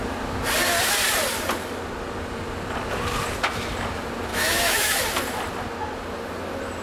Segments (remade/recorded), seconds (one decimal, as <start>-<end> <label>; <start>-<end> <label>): 0.0-4.3 recorded; 4.3-5.0 remade; 5.0-6.8 recorded